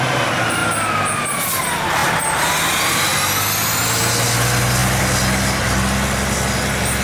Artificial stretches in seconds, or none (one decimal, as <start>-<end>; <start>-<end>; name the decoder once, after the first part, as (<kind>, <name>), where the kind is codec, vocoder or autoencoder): none